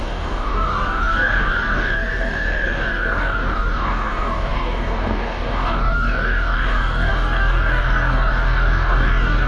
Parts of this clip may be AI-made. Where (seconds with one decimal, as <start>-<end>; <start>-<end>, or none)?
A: 0.0-9.5